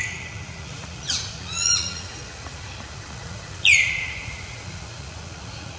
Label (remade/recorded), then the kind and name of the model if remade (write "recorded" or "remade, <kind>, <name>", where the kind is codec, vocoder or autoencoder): remade, vocoder, Vocos